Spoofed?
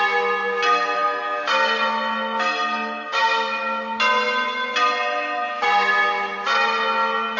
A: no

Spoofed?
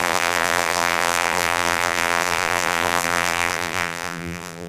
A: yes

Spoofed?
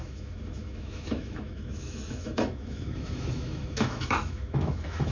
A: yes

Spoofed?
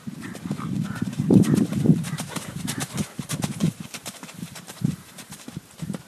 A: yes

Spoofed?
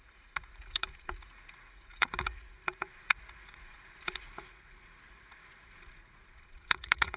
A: yes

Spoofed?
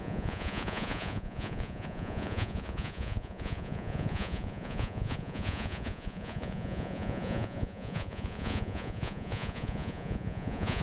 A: yes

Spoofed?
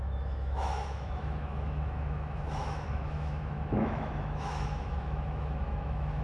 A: yes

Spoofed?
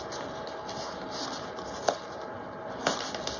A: no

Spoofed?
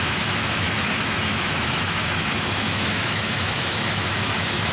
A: yes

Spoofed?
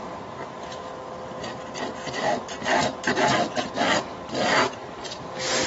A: no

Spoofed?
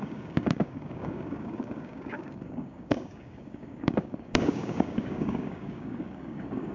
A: yes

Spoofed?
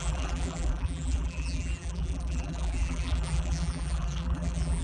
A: yes